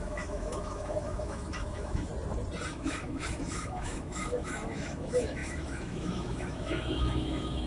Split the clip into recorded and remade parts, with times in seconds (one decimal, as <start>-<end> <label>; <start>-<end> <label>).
0.0-2.1 remade; 2.1-2.7 recorded; 2.7-7.7 remade